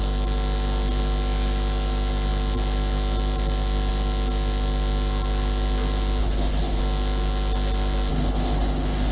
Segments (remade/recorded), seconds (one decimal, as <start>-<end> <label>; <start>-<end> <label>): 0.0-6.2 recorded; 6.2-6.8 remade; 6.8-8.1 recorded; 8.1-9.1 remade